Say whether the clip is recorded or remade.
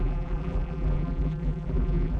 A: remade